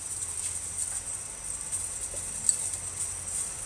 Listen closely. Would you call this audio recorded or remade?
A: recorded